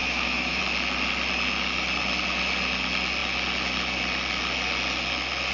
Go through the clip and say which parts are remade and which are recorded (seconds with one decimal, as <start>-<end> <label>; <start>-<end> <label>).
0.0-0.6 remade; 0.6-5.5 recorded